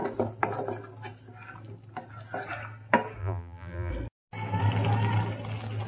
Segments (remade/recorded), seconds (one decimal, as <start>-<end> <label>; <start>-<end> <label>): 0.0-3.2 recorded; 3.2-3.9 remade; 3.9-5.9 recorded